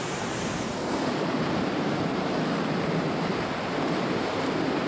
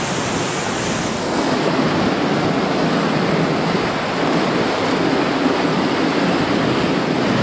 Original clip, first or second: second